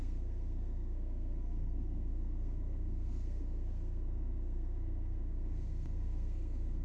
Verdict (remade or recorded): remade